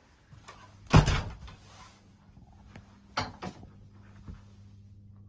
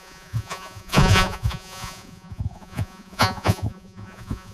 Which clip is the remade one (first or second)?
second